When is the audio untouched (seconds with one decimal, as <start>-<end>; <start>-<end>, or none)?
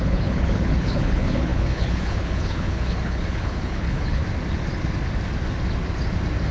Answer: 4.2-6.5